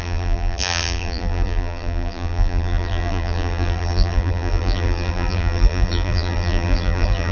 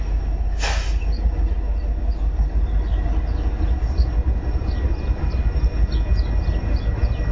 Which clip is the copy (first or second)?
first